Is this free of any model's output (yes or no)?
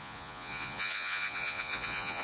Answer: no